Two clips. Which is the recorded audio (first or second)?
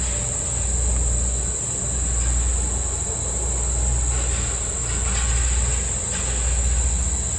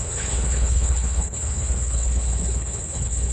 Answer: first